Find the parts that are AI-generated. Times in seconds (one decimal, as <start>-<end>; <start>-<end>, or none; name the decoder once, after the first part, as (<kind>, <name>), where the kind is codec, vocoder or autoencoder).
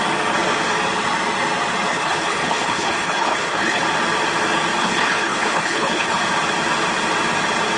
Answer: 1.9-3.8 (codec, HILCodec); 4.8-6.2